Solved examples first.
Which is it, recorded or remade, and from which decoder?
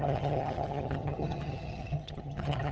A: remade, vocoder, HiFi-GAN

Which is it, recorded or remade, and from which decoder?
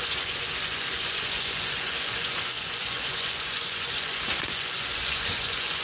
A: remade, vocoder, Vocos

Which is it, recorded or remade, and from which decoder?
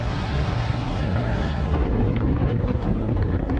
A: remade, codec, SNAC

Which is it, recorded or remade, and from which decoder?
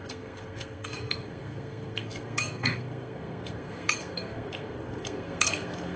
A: remade, codec, SNAC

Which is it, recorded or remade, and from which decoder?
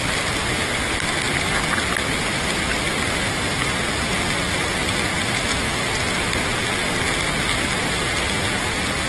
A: recorded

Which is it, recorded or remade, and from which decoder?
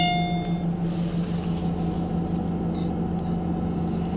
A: recorded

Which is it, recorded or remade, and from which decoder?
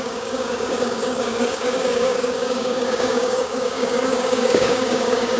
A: remade, codec, DAC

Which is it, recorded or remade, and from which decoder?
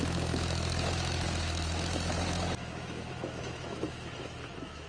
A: remade, autoencoder, DAC-VAE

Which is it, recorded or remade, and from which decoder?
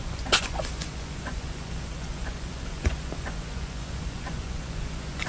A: remade, vocoder, Vocos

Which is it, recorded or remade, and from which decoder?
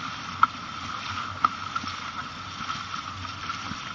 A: recorded